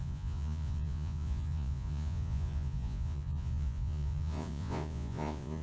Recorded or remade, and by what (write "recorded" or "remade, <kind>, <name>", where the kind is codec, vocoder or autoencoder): remade, vocoder, Vocos